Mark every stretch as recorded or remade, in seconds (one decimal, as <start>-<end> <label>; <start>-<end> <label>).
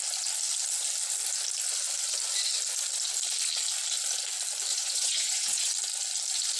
0.0-4.7 recorded; 4.7-5.7 remade; 5.7-6.6 recorded